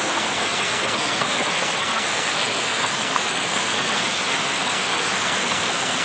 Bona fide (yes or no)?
no